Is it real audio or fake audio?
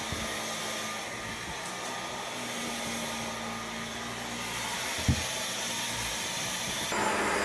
real